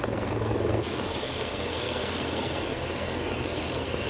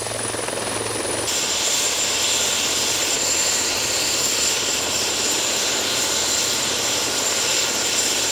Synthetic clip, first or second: first